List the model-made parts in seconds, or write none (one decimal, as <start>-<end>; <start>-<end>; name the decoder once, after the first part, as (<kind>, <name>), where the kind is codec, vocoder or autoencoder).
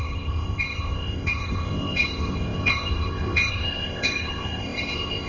0.0-5.3 (codec, ZipCodec)